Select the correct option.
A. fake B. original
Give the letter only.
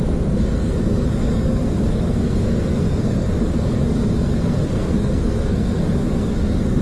A